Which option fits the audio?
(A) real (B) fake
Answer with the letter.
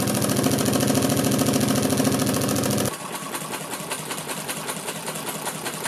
A